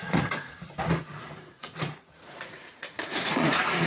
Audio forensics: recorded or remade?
remade